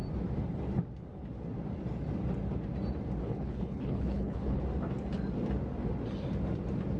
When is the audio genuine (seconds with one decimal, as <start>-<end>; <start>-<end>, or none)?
0.0-3.2; 4.6-7.0